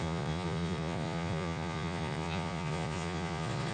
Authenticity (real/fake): fake